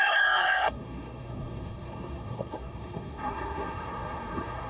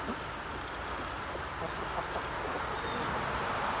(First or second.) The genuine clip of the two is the second